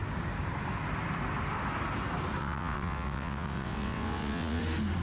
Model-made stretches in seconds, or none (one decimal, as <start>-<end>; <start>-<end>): 2.4-4.6

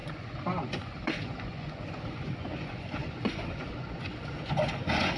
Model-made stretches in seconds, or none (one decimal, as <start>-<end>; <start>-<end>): 0.0-5.2

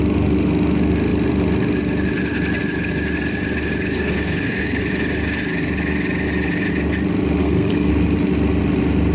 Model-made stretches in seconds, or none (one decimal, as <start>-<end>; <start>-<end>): 3.9-4.8; 7.4-7.9

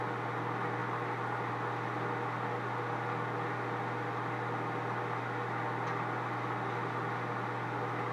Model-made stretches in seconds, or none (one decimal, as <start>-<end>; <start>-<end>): none